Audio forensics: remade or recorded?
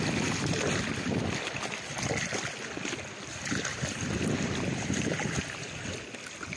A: recorded